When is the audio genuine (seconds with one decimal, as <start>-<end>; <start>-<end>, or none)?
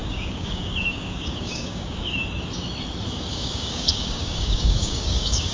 2.2-3.3